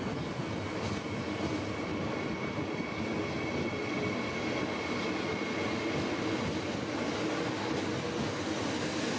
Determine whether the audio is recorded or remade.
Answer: recorded